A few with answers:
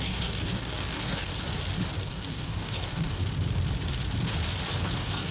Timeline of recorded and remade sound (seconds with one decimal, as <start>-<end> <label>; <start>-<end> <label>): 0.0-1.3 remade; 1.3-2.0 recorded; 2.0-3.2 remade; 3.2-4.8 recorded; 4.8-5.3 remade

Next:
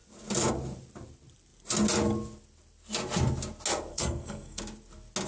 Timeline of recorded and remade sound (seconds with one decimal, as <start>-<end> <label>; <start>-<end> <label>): 0.0-3.9 recorded; 3.9-4.6 remade; 4.6-5.3 recorded

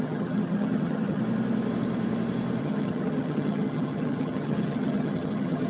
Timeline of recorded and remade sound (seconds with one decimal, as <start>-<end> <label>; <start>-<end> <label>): 0.0-1.2 remade; 1.2-2.6 recorded; 2.6-5.7 remade

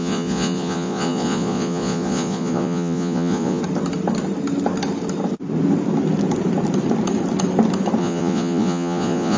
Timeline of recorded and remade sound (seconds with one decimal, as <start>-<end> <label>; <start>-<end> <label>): 0.0-3.6 remade; 3.6-8.0 recorded; 8.0-9.4 remade